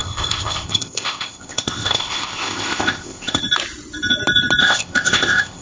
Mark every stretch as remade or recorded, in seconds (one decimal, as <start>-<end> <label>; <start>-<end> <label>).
0.0-3.4 remade; 3.4-4.6 recorded; 4.6-5.6 remade